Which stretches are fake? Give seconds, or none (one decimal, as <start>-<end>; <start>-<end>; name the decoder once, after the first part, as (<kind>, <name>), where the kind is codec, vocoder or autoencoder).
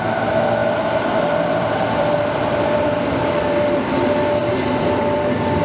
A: 0.6-4.0 (vocoder, BigVGAN v2); 4.4-5.6